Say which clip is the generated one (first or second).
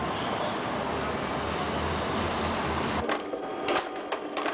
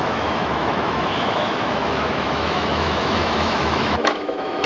second